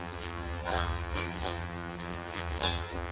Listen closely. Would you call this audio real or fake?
fake